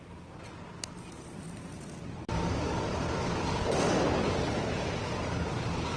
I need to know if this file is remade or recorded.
recorded